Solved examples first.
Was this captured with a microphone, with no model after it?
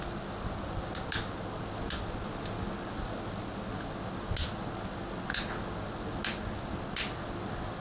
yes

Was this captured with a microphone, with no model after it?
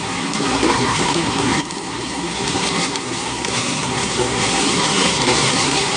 no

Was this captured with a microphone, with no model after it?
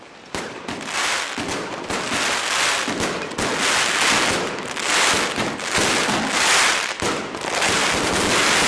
yes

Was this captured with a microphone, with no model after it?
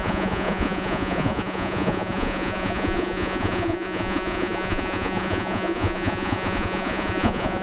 no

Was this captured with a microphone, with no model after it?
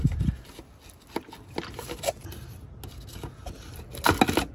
yes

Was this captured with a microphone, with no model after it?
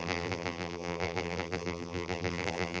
no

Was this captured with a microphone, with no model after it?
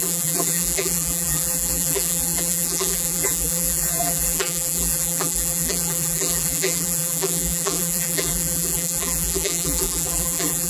no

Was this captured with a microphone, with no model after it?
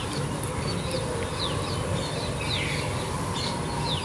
yes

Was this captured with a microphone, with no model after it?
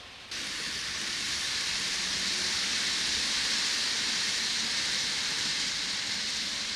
yes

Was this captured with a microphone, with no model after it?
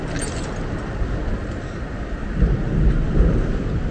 yes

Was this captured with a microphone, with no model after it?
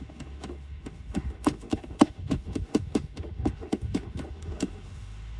no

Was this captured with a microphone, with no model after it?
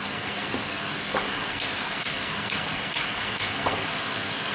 no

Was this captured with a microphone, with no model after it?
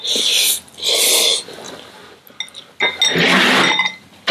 yes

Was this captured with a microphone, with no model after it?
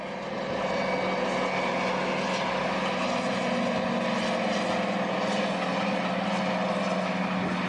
yes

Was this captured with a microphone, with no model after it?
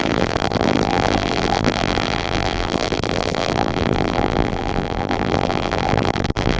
no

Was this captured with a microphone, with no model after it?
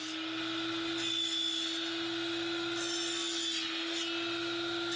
yes